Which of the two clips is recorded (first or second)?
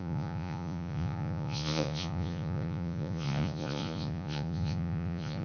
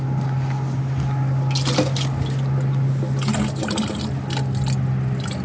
second